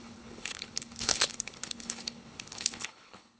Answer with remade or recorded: remade